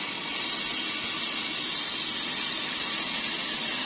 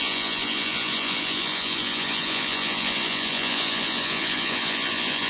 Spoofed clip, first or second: second